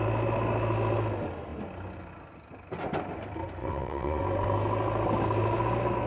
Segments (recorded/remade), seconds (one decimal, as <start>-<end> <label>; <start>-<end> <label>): 0.0-3.6 recorded; 3.6-4.2 remade; 4.2-6.1 recorded